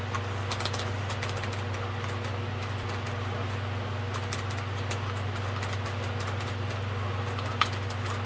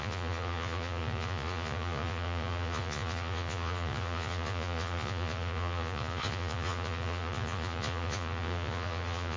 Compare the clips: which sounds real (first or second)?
first